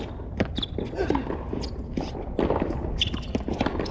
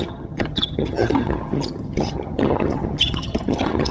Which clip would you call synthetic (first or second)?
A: second